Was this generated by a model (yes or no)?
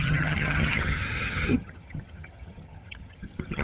yes